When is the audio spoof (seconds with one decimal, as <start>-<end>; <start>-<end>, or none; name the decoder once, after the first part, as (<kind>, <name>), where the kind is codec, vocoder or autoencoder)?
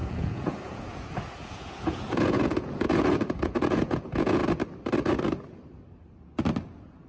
0.0-4.4 (vocoder, Vocos)